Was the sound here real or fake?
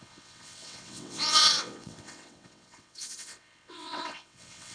fake